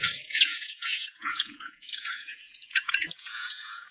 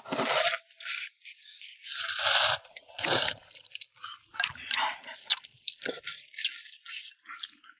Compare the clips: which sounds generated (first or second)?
first